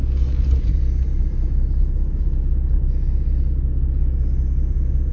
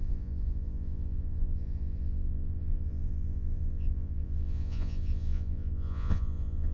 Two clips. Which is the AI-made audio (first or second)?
second